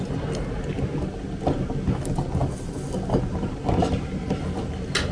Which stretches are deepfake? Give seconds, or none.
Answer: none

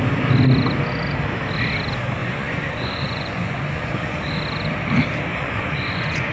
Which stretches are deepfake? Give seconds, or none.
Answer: 2.2-4.4; 5.3-6.3